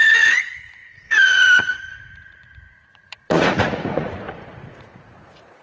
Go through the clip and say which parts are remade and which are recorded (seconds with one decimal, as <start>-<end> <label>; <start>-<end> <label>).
0.0-5.6 remade